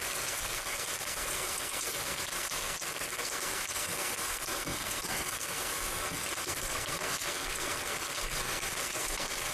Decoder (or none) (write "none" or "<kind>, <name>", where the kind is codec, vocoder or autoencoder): codec, SNAC